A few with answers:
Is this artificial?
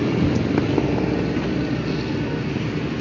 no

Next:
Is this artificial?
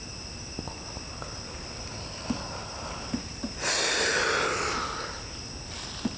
no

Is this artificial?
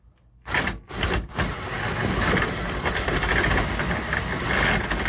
no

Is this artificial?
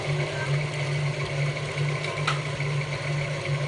no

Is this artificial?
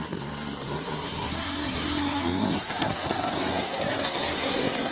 yes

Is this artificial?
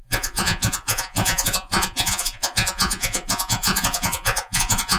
yes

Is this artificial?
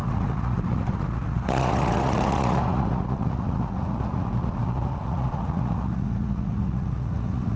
yes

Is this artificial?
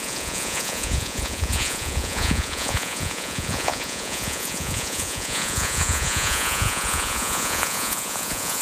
yes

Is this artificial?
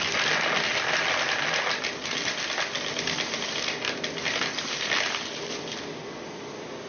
no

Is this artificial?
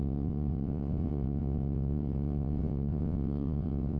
yes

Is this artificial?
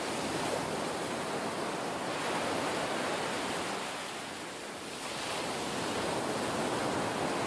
no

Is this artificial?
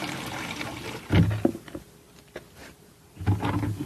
no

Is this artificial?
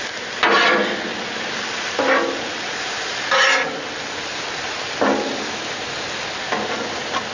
no